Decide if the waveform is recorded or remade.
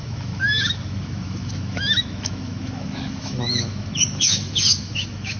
remade